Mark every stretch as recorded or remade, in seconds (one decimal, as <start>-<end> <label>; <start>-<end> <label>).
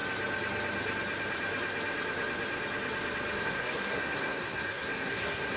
0.0-3.4 recorded; 3.4-5.6 remade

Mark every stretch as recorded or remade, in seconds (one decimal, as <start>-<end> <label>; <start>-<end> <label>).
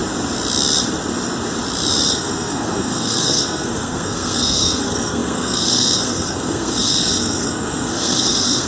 0.0-2.1 recorded; 2.1-8.7 remade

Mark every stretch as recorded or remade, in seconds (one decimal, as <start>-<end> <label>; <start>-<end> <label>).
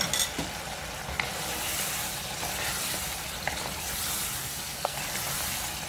0.0-4.4 recorded; 4.4-5.0 remade; 5.0-5.9 recorded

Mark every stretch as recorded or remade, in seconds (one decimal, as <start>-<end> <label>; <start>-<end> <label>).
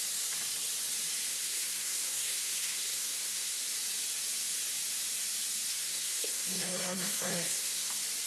0.0-1.3 recorded; 1.3-3.6 remade; 3.6-5.7 recorded; 5.7-7.9 remade; 7.9-8.3 recorded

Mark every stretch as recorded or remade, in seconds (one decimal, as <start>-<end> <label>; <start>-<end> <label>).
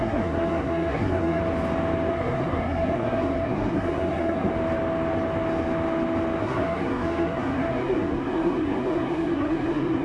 0.0-1.4 remade; 1.4-2.1 recorded; 2.1-4.5 remade; 4.5-6.4 recorded; 6.4-10.0 remade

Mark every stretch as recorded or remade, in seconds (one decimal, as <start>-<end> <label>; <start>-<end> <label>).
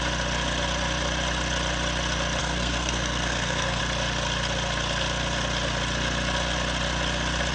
0.0-2.4 recorded; 2.4-3.8 remade; 3.8-7.5 recorded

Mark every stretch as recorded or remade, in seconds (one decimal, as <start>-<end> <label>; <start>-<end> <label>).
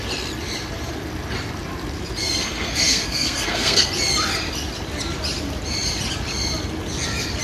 0.0-2.2 recorded; 2.2-3.9 remade; 3.9-7.4 recorded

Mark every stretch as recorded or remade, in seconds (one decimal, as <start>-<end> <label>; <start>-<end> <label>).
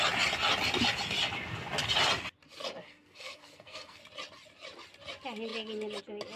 0.0-2.8 recorded; 2.8-4.0 remade; 4.0-6.4 recorded